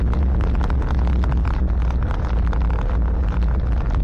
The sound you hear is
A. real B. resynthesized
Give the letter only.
A